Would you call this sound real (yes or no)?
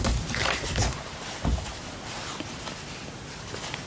yes